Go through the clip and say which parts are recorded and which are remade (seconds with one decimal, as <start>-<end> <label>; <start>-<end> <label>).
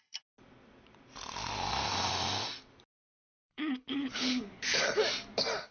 0.0-3.4 recorded; 3.4-4.8 remade; 4.8-5.7 recorded